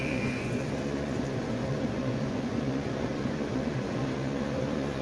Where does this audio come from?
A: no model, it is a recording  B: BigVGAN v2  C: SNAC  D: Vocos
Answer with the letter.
D